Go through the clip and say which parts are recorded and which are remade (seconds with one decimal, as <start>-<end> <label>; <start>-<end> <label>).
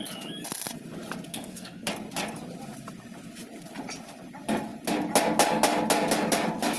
0.0-1.3 recorded; 1.3-1.9 remade; 1.9-6.8 recorded